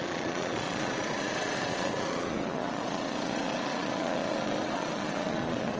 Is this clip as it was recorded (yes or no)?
no